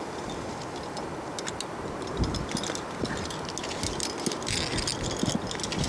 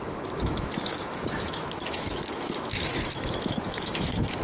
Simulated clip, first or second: second